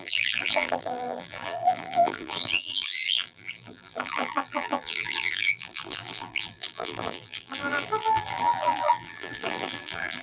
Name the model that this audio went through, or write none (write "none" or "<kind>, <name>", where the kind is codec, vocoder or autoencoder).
vocoder, BigVGAN v2